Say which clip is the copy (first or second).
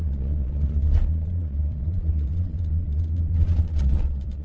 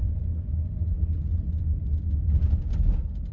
first